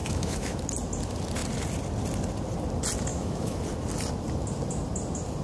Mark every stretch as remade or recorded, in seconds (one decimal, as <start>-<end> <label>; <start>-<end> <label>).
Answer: 0.0-0.6 remade; 0.6-3.1 recorded; 3.1-3.6 remade; 3.6-5.4 recorded